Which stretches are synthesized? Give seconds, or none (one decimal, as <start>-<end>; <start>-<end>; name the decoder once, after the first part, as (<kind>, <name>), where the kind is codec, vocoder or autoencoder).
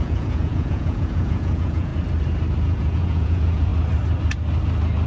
0.0-1.9 (vocoder, Vocos); 2.6-3.7